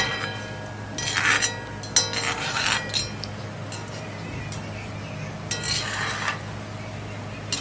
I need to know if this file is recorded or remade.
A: recorded